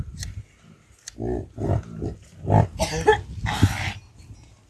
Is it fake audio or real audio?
real